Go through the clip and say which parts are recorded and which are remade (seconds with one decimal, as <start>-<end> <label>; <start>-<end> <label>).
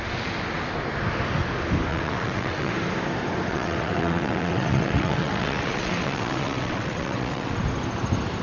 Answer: 0.0-1.9 recorded; 1.9-2.7 remade; 2.7-3.5 recorded; 3.5-7.6 remade; 7.6-8.4 recorded